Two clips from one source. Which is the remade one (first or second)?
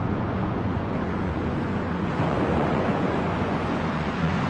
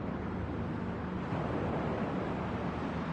first